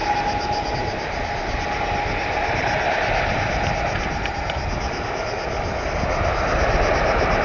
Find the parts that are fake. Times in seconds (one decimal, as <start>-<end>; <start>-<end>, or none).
none